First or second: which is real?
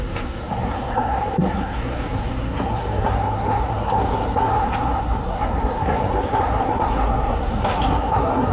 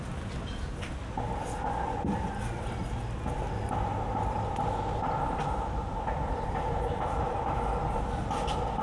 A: second